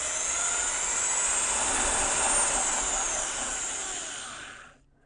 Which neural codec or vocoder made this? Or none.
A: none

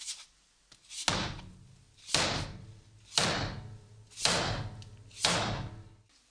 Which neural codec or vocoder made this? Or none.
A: none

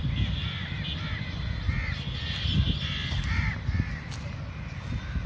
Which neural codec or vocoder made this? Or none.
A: none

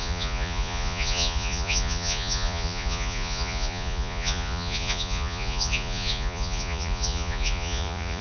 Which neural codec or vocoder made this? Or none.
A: vocoder, Vocos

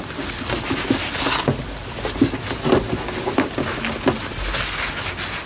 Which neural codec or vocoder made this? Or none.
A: none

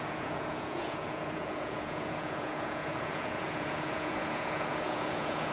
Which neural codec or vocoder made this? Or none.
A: vocoder, Vocos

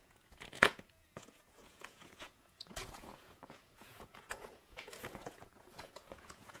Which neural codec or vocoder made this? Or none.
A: vocoder, Vocos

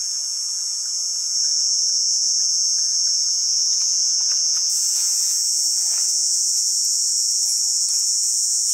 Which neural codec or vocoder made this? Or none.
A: vocoder, Vocos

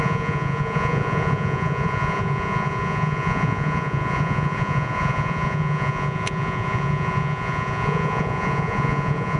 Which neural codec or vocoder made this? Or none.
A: vocoder, Vocos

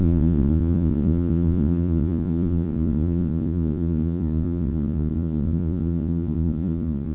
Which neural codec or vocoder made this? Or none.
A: vocoder, Vocos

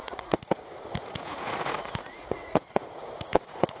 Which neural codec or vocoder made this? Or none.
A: vocoder, Vocos